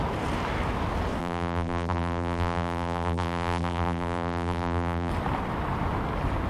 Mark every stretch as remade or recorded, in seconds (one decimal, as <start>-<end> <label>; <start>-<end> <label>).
0.0-1.2 recorded; 1.2-5.1 remade; 5.1-6.5 recorded